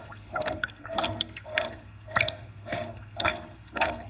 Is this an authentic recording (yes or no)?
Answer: no